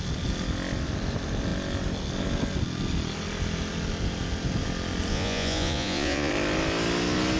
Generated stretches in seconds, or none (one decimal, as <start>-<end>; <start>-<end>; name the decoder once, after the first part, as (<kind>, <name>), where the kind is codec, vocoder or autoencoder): 5.1-6.3 (vocoder, Vocos)